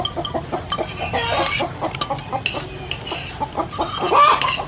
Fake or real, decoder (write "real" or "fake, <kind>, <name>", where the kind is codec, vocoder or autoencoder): real